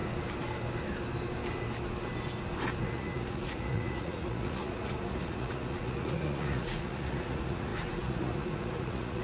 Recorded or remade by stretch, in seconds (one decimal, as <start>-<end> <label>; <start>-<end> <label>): 0.0-2.8 recorded; 2.8-9.2 remade